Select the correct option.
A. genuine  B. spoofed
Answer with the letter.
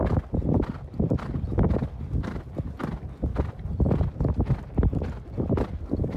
A